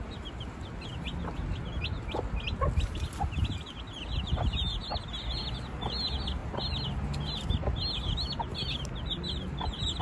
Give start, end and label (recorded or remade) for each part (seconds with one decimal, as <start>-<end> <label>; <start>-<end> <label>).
0.0-10.0 recorded